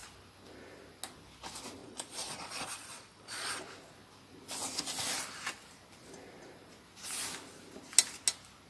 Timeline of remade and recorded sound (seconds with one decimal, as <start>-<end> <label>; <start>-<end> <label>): 0.0-1.8 recorded; 1.8-3.6 remade; 3.6-8.7 recorded